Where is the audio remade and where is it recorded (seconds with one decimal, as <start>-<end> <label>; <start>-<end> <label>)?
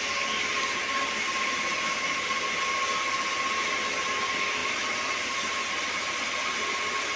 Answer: 0.0-4.6 recorded; 4.6-5.6 remade; 5.6-7.2 recorded